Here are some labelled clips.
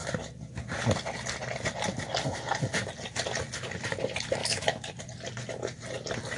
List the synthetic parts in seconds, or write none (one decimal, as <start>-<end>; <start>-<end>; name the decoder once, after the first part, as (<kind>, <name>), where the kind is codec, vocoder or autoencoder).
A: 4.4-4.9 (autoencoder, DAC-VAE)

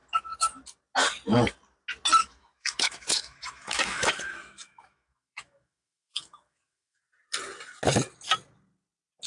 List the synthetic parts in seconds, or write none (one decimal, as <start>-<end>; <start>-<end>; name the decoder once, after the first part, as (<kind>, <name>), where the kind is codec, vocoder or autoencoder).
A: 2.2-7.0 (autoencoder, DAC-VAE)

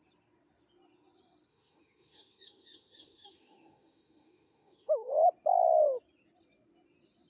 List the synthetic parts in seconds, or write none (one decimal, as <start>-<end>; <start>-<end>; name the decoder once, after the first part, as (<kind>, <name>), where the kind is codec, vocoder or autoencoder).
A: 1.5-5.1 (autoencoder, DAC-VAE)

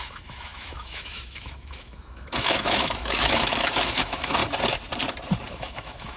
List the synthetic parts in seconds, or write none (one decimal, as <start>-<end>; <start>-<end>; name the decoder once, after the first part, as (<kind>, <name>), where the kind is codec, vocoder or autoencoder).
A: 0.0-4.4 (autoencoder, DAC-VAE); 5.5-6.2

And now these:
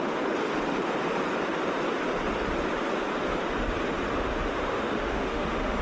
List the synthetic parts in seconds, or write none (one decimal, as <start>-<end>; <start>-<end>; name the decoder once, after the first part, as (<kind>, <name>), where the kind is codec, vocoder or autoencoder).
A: 4.3-5.8 (autoencoder, DAC-VAE)

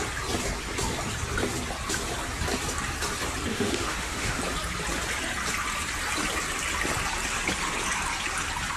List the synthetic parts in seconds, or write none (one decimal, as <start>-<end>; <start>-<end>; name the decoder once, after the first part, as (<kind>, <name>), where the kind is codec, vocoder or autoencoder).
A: 3.5-4.4 (autoencoder, DAC-VAE)

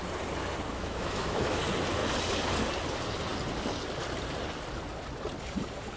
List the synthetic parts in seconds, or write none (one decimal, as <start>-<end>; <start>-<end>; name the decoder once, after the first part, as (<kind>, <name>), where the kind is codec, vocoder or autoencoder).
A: 0.7-1.6 (autoencoder, DAC-VAE)

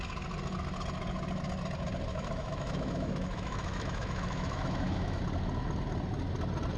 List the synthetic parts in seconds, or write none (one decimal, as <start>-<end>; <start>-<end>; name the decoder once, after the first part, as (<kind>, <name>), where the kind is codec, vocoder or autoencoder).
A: 2.1-5.2 (autoencoder, DAC-VAE)